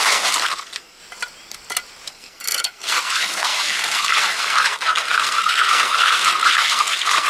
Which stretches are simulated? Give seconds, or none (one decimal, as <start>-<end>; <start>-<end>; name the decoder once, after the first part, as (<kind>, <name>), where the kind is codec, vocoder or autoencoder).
0.0-1.0 (codec, SNAC); 2.1-7.3